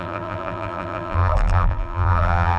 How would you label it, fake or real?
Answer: fake